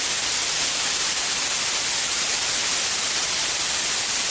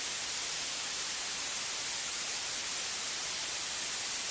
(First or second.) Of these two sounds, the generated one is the first